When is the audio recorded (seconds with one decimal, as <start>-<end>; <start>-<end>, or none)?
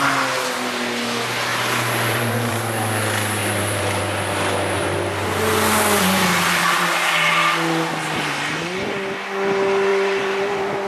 0.0-1.5; 2.6-3.4; 4.0-9.9; 10.4-10.9